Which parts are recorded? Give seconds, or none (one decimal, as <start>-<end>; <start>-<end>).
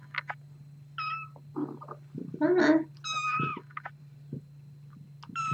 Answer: 0.0-5.5